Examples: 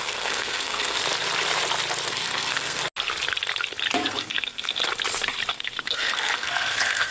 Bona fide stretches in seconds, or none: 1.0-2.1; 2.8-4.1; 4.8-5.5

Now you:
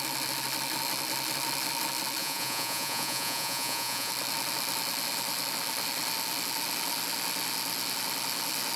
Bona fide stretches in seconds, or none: 0.0-2.2; 4.1-8.8

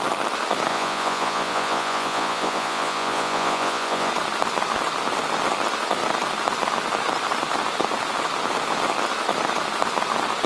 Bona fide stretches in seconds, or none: 0.0-0.7; 4.1-10.5

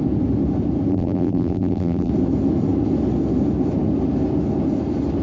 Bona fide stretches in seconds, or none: 0.0-0.9; 2.1-5.2

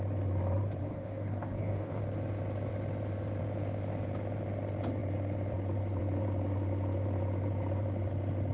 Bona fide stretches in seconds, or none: 0.0-0.8; 2.0-8.5

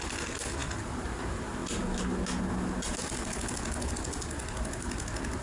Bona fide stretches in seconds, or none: 0.0-5.4